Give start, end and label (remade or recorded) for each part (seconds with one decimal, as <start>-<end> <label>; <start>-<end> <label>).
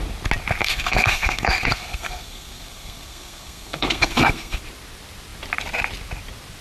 0.0-0.6 recorded; 0.6-4.6 remade; 4.6-6.6 recorded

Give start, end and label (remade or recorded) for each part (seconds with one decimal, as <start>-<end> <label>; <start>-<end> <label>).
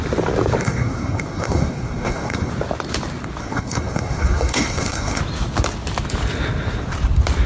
0.0-0.6 recorded; 0.6-2.5 remade; 2.5-3.4 recorded; 3.4-5.2 remade; 5.2-7.5 recorded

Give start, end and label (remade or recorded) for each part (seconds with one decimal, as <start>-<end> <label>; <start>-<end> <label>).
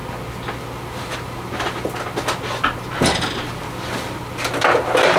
0.0-5.2 recorded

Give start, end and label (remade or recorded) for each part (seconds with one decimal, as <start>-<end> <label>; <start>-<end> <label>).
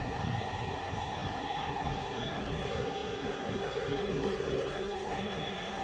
0.0-5.8 remade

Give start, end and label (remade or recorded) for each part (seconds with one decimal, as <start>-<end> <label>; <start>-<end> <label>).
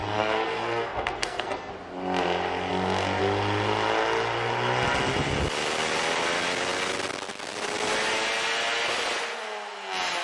0.0-1.7 remade; 1.7-10.2 recorded